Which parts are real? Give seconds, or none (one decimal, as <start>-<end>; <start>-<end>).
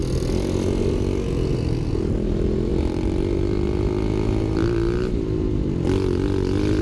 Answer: 0.0-6.8